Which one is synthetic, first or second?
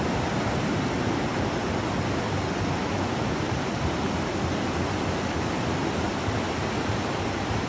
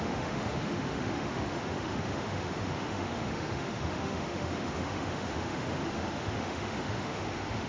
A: second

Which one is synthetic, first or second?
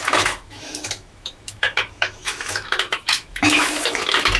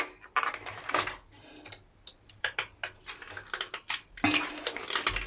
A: first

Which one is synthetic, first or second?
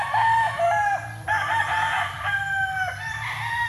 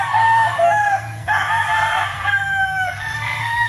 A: second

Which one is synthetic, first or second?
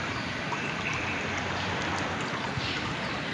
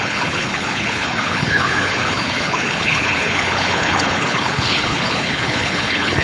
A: second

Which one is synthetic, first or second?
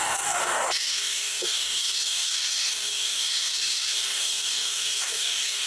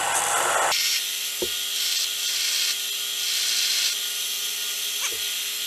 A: first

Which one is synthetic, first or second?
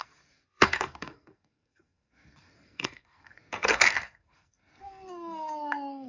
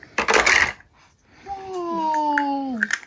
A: first